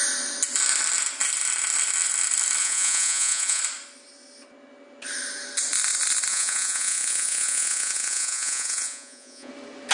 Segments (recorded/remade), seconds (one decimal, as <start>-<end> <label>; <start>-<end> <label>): 0.0-2.6 recorded; 2.6-3.6 remade; 3.6-6.3 recorded; 6.3-9.5 remade; 9.5-9.9 recorded